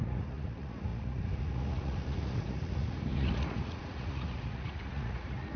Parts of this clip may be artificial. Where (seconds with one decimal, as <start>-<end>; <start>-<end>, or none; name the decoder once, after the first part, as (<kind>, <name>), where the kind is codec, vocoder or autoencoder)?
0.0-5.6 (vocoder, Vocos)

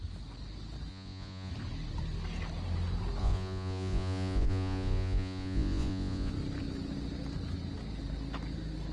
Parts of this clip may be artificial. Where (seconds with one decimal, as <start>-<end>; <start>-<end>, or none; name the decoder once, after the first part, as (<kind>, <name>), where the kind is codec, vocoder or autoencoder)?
0.9-1.5 (vocoder, Vocos); 3.2-6.3

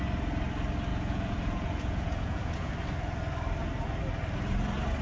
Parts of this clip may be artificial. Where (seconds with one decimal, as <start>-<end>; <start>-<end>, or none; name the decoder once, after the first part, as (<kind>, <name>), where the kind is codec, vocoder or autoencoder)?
0.9-2.7 (vocoder, Vocos)

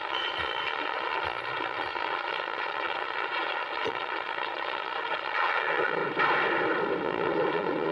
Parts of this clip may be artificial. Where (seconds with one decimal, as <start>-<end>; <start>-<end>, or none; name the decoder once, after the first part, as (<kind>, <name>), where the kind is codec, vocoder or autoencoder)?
0.0-6.0 (vocoder, Vocos); 7.0-7.9

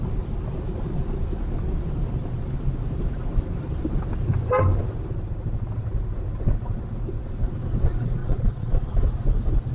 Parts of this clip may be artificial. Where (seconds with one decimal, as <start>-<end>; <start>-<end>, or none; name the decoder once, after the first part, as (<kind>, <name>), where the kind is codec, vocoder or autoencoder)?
8.2-8.9 (vocoder, Vocos)

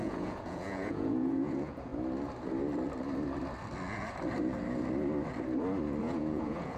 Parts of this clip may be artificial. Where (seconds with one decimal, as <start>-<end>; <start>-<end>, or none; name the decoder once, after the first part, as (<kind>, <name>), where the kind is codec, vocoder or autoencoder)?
0.0-1.9 (vocoder, Vocos); 6.0-6.8

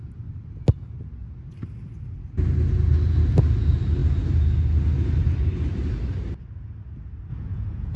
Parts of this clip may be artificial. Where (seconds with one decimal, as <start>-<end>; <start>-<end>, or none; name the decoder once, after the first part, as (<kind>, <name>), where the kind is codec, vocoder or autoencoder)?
7.3-8.0 (vocoder, Vocos)